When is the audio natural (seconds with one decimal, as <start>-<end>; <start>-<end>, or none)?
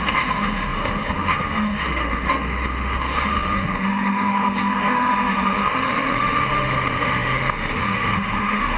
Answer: none